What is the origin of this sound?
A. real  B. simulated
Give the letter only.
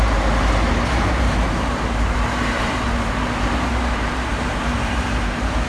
B